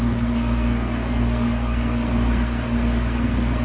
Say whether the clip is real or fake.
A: fake